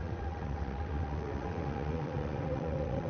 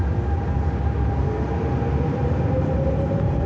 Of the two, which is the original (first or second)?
second